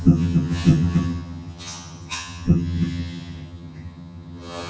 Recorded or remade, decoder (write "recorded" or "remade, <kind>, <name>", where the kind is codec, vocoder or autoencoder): remade, vocoder, HiFi-GAN